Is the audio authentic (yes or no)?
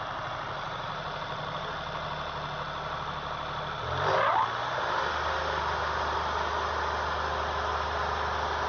yes